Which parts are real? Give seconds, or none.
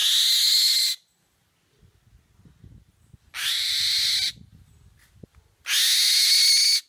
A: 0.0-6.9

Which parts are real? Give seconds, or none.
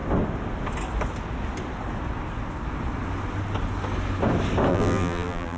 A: 0.0-4.7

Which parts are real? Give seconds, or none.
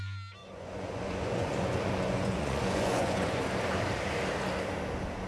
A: 0.0-0.4; 3.4-5.3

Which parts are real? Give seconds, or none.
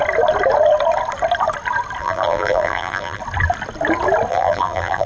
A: 0.0-2.0; 3.2-4.3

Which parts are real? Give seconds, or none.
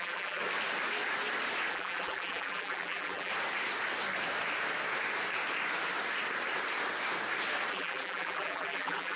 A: 0.4-1.7; 3.3-7.7